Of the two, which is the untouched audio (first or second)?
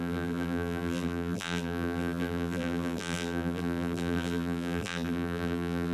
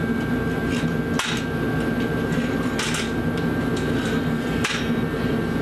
second